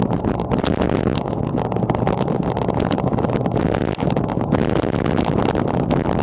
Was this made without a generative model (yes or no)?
yes